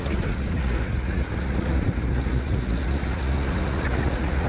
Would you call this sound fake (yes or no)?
yes